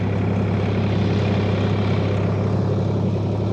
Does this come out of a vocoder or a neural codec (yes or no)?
no